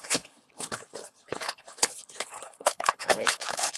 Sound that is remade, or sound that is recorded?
remade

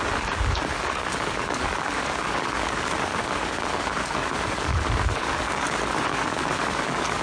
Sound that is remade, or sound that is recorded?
remade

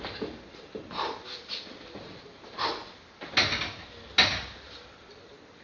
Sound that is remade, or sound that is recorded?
recorded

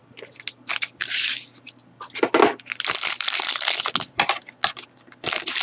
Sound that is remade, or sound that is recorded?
recorded